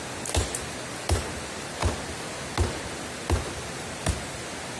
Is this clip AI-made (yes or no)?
no